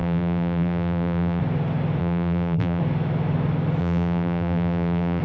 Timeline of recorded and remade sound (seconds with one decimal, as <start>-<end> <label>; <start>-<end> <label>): 0.0-1.4 remade; 1.4-2.0 recorded; 2.0-2.8 remade; 2.8-3.8 recorded; 3.8-5.2 remade